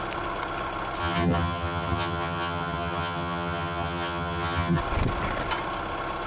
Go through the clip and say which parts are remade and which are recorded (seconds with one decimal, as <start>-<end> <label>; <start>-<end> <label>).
0.0-1.0 recorded; 1.0-4.8 remade; 4.8-6.3 recorded